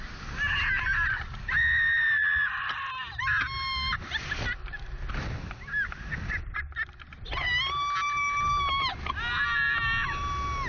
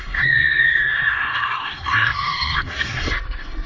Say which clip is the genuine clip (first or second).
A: first